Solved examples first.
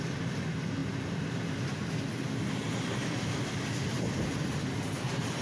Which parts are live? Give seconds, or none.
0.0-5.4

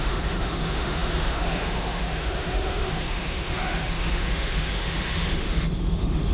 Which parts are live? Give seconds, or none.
none

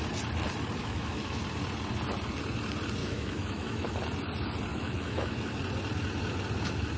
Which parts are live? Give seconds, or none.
0.0-0.8; 1.4-3.0; 3.9-4.7; 5.5-7.0